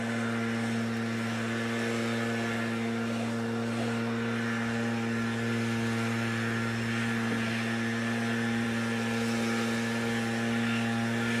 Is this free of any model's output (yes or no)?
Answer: yes